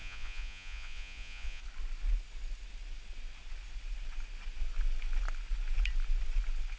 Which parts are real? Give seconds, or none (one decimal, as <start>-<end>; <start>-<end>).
1.6-6.8